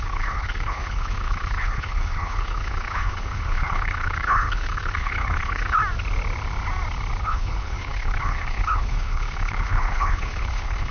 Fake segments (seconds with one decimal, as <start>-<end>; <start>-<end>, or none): 0.0-5.8; 7.2-10.9